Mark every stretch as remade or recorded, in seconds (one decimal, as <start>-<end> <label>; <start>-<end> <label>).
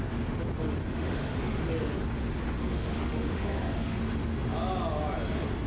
0.0-0.8 recorded; 0.8-1.6 remade; 1.6-2.6 recorded; 2.6-4.0 remade; 4.0-5.7 recorded